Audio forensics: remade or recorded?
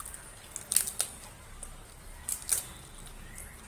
recorded